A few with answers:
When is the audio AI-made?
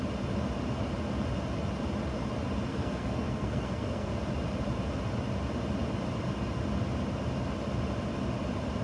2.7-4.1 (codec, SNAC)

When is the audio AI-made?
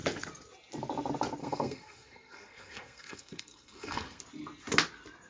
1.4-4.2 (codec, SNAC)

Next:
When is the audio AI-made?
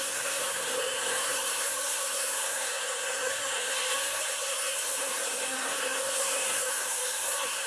0.0-7.7 (codec, SNAC)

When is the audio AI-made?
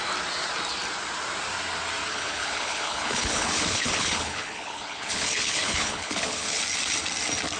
2.1-6.6 (codec, HILCodec)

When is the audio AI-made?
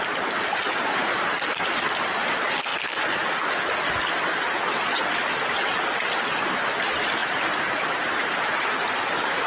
none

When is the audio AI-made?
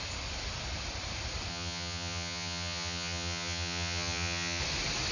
1.5-4.6 (vocoder, HiFi-GAN)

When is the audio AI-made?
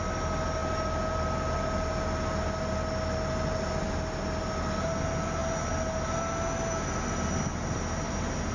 none